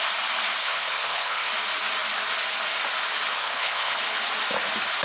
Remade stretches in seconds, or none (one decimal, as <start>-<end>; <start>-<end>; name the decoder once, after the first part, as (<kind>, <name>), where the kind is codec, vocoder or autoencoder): 0.6-1.5 (codec, HILCodec); 3.3-4.0

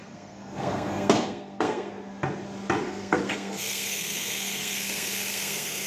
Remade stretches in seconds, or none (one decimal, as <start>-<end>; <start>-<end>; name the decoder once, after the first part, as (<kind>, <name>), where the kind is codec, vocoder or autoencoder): 0.0-1.9 (codec, SNAC); 2.8-5.9